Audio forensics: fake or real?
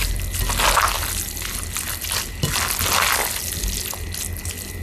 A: real